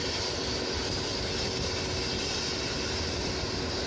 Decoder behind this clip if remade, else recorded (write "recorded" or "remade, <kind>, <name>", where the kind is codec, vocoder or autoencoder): recorded